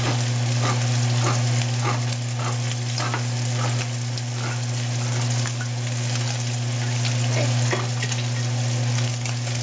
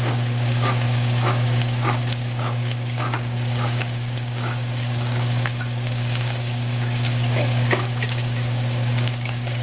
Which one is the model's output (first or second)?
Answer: second